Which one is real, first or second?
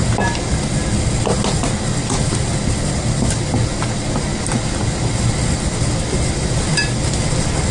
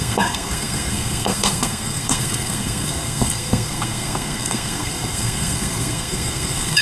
first